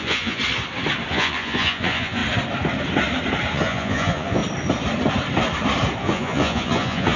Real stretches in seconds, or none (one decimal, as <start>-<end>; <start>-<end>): 0.4-1.1; 2.2-3.5; 4.4-6.0